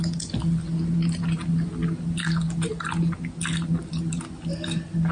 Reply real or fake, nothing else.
real